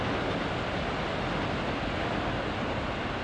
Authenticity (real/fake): real